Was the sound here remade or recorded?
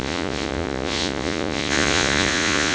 remade